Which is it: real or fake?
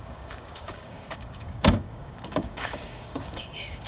fake